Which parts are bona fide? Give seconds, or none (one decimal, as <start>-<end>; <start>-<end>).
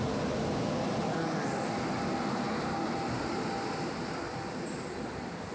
0.0-5.5